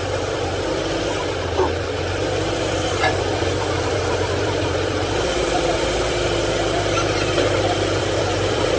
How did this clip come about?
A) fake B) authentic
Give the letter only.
A